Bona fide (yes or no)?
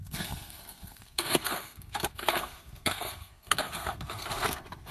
no